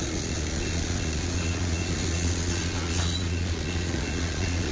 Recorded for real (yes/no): no